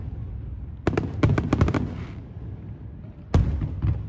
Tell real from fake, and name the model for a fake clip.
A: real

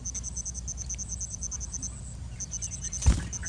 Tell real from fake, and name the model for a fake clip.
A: real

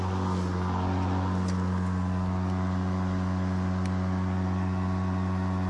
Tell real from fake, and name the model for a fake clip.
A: real